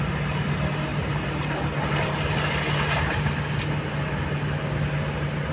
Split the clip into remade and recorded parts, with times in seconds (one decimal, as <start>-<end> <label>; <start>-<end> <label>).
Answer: 0.0-5.5 recorded